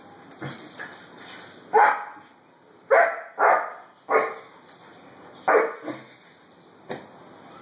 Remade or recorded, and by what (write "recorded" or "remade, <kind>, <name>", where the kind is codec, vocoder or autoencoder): recorded